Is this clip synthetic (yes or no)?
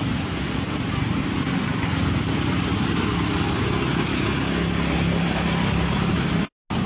no